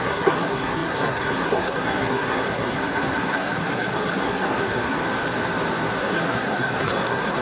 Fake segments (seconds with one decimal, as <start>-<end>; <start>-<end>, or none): 0.0-5.0; 6.0-7.4